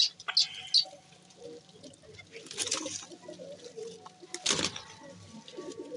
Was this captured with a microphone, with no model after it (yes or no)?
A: yes